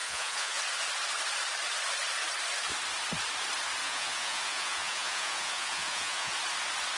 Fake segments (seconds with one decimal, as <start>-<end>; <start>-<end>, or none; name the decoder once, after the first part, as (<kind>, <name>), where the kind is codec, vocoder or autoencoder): 0.0-0.6 (vocoder, Vocos); 3.8-6.3